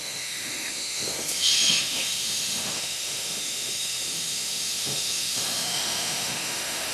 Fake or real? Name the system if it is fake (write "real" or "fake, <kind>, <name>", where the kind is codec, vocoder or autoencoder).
fake, autoencoder, DAC-VAE